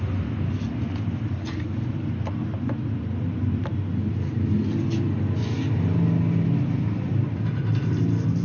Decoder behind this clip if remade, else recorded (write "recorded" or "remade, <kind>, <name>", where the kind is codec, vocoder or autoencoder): recorded